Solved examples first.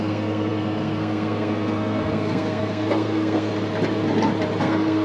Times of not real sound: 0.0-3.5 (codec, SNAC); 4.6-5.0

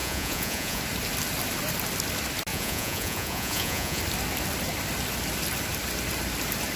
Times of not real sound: 0.0-0.8 (vocoder, Vocos); 2.5-4.0

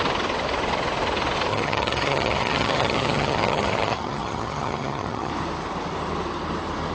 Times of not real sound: 1.5-5.3 (vocoder, HiFi-GAN)

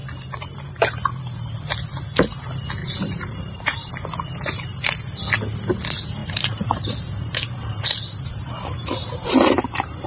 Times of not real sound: 0.0-1.2 (vocoder, BigVGAN v2); 2.8-3.9; 6.2-10.1

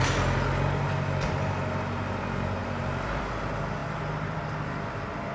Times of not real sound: 2.6-3.2 (vocoder, BigVGAN v2)

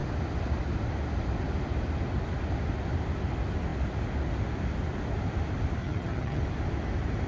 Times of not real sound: 5.8-6.4 (vocoder, HiFi-GAN)

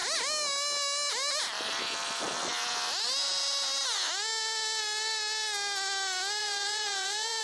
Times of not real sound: 6.4-7.4 (vocoder, Vocos)

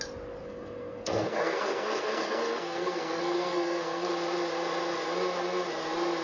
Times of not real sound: 0.4-4.1 (codec, SNAC)